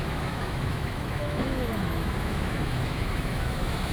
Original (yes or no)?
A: no